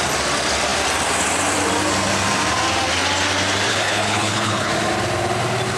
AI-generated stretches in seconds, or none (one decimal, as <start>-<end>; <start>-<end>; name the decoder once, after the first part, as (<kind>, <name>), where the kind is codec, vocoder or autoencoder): 3.7-4.7 (codec, HILCodec)